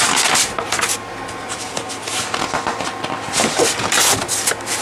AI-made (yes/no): no